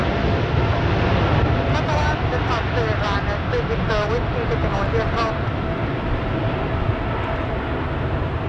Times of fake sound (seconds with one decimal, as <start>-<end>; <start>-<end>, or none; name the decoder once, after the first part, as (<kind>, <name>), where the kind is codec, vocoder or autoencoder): none